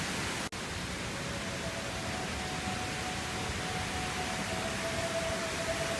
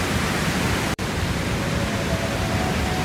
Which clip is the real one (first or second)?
first